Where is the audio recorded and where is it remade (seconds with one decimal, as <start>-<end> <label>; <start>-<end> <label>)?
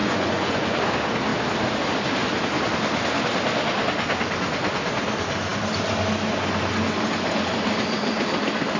0.0-0.8 remade; 0.8-8.8 recorded